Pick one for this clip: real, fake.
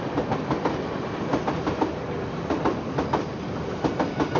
real